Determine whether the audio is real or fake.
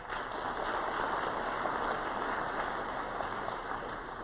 real